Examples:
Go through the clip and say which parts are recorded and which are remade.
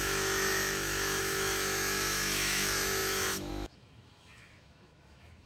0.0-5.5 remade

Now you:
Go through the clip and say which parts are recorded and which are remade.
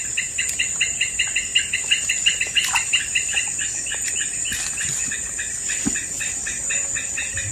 0.0-1.5 recorded; 1.5-2.4 remade; 2.4-7.5 recorded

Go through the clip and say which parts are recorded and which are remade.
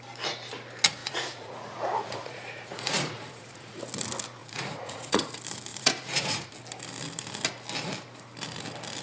0.0-1.0 recorded; 1.0-3.8 remade; 3.8-4.4 recorded; 4.4-5.3 remade; 5.3-5.7 recorded; 5.7-6.5 remade; 6.5-9.0 recorded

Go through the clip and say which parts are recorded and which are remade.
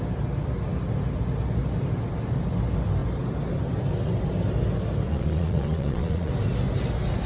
0.0-5.1 recorded; 5.1-6.3 remade; 6.3-7.3 recorded